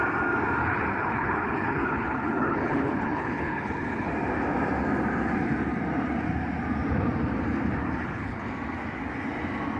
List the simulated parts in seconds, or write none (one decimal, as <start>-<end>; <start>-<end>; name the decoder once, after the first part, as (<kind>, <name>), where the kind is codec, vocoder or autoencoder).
0.6-4.1 (codec, HILCodec); 7.8-8.5